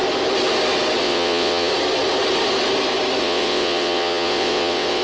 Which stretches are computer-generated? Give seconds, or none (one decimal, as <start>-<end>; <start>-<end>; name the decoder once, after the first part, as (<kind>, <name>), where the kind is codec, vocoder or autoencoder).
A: 1.0-1.7 (vocoder, WaveNeXt); 3.2-5.0